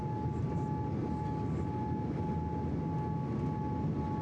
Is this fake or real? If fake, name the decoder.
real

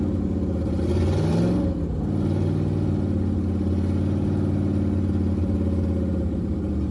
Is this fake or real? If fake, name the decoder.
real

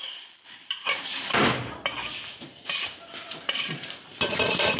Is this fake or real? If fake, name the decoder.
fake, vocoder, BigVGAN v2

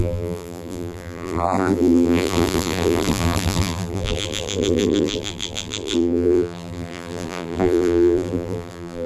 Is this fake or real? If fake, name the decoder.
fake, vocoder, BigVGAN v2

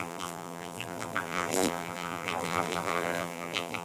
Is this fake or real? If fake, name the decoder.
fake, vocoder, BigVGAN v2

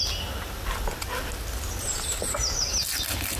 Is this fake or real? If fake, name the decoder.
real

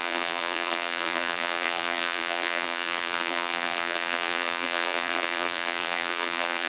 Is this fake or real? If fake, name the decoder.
fake, vocoder, BigVGAN v2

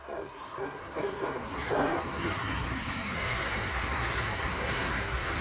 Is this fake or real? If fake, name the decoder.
fake, codec, SNAC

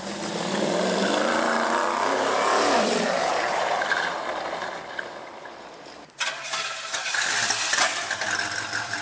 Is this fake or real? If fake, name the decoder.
fake, vocoder, BigVGAN v2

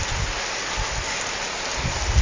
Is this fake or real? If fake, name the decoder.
real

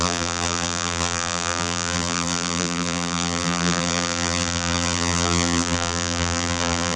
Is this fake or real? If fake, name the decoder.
fake, vocoder, BigVGAN v2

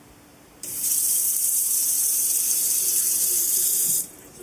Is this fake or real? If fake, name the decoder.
fake, vocoder, BigVGAN v2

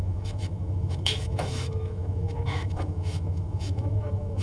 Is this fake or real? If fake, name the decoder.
fake, autoencoder, DAC-VAE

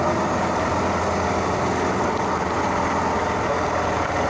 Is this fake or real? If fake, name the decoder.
real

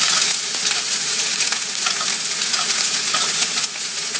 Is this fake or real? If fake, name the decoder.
fake, vocoder, Vocos